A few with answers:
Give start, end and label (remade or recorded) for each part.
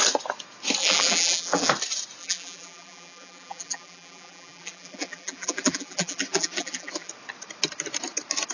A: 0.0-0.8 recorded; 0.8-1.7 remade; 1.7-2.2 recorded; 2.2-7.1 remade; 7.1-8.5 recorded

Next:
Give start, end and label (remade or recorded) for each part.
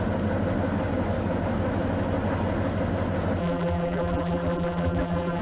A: 0.0-3.4 recorded; 3.4-5.4 remade